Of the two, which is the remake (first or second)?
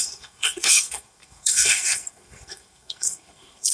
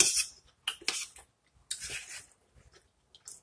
first